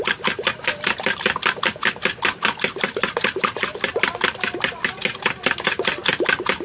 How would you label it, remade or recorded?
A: recorded